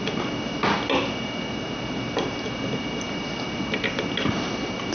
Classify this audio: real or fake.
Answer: real